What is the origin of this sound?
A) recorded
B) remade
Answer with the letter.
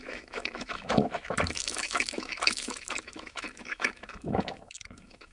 B